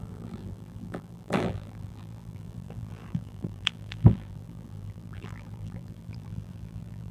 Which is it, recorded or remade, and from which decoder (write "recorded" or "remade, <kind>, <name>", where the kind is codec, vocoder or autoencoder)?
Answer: remade, vocoder, BigVGAN v2